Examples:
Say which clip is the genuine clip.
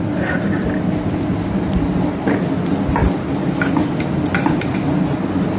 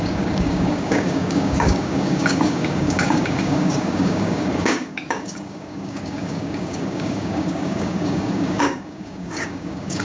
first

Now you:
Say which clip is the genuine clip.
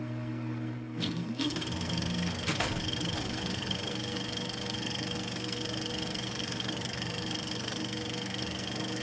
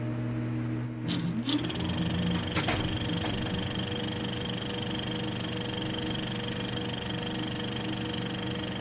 second